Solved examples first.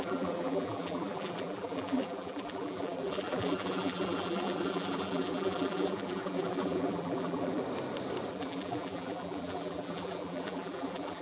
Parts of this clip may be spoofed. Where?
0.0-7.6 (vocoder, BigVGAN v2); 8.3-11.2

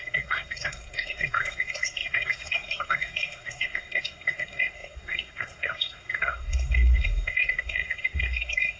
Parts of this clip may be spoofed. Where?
0.0-8.8 (codec, SNAC)

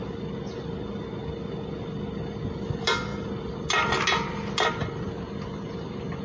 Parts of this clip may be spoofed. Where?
none

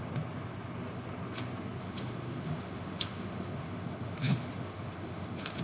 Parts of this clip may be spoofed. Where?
1.8-5.6 (autoencoder, DAC-VAE)

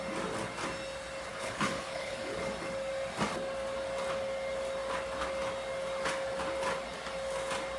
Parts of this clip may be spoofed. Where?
1.3-2.4 (codec, HILCodec)

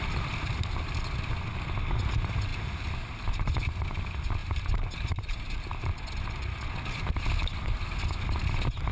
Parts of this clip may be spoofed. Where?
4.4-5.9 (vocoder, BigVGAN v2)

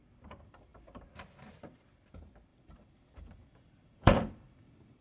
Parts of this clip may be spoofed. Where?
2.5-5.0 (vocoder, BigVGAN v2)

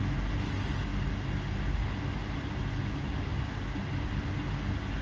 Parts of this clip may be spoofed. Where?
none